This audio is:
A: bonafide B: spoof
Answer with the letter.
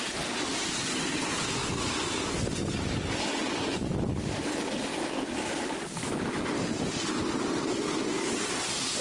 A